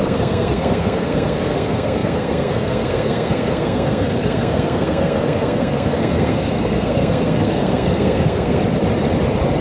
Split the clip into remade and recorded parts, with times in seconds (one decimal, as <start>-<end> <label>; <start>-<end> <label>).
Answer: 0.0-8.6 remade; 8.6-9.6 recorded